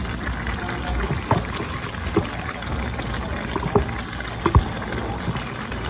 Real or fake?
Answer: real